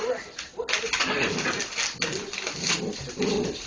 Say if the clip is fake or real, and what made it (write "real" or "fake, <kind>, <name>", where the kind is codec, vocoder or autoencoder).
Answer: real